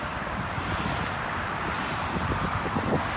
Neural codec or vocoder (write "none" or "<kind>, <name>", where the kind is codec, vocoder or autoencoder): none